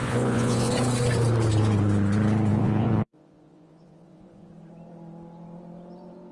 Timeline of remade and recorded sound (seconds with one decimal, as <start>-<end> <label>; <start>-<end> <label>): 0.0-0.7 remade; 0.7-2.5 recorded; 2.5-4.5 remade; 4.5-6.3 recorded